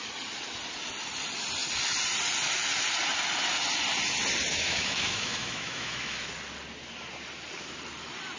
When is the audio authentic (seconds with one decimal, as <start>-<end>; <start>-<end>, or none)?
0.0-4.5; 6.3-8.4